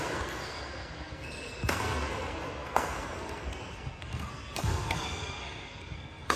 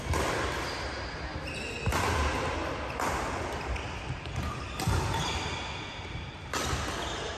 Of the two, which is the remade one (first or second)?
first